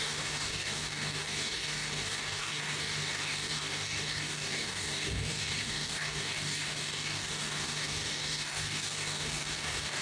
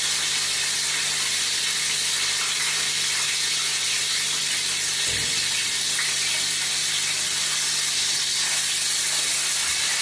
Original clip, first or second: second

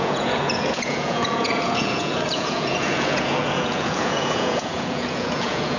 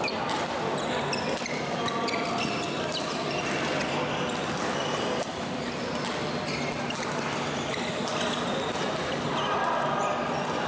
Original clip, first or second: second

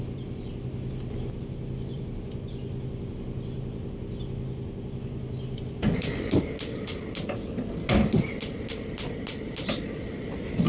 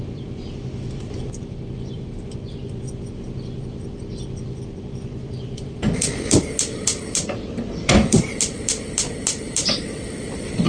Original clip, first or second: first